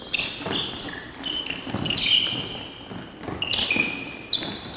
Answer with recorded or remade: recorded